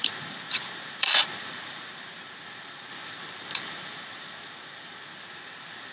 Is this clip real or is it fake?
fake